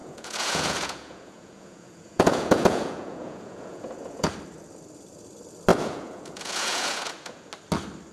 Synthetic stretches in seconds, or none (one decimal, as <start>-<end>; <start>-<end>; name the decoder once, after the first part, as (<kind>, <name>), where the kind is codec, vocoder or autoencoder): 0.0-4.3 (vocoder, Vocos); 5.7-7.5